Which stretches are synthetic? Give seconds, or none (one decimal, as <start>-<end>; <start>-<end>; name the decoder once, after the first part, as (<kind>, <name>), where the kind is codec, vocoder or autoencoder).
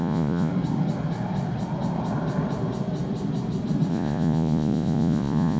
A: 0.0-0.5 (vocoder, Vocos); 3.9-5.6